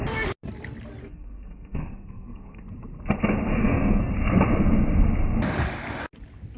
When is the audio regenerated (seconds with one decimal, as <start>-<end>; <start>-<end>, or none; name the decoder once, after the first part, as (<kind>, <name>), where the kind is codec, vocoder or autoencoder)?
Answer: 1.0-2.6 (codec, SNAC); 3.6-4.1